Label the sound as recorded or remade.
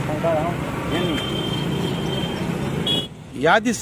recorded